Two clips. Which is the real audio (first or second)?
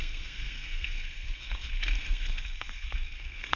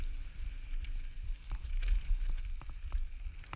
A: second